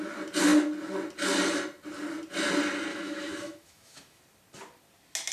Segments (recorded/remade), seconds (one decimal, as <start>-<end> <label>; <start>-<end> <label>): 0.0-2.9 recorded; 2.9-4.2 remade; 4.2-5.3 recorded